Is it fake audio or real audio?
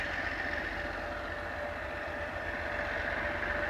real